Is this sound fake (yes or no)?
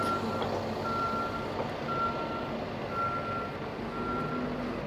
no